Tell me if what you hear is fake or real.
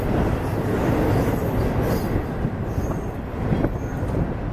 real